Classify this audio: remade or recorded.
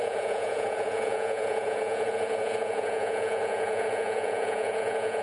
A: remade